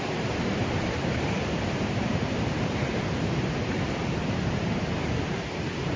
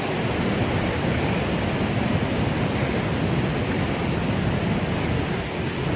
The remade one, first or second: first